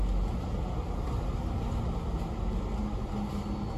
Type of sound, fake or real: real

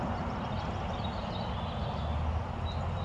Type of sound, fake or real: real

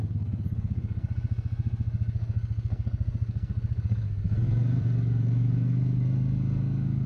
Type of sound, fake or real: fake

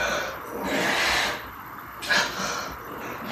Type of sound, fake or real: real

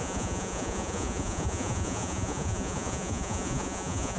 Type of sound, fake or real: fake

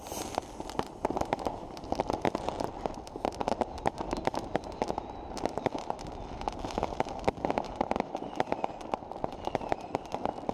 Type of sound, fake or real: real